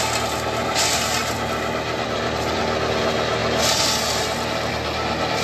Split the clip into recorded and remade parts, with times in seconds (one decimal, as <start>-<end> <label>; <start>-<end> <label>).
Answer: 0.0-1.2 recorded; 1.2-2.6 remade; 2.6-5.4 recorded